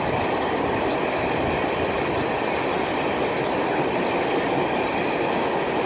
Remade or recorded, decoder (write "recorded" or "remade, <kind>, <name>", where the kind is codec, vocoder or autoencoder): recorded